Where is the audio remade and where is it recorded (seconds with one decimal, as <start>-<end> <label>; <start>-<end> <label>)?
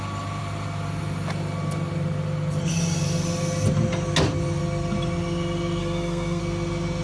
0.0-5.8 recorded; 5.8-6.4 remade; 6.4-7.0 recorded